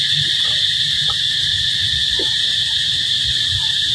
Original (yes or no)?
no